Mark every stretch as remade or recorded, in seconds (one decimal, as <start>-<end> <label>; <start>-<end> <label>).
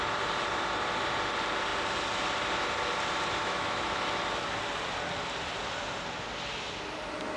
0.0-3.4 recorded; 3.4-4.0 remade; 4.0-7.4 recorded